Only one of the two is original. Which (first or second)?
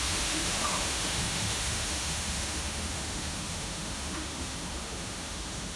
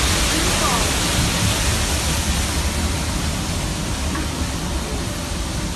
second